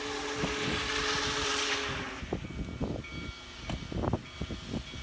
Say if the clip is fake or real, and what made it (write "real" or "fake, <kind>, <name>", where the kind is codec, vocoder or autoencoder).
real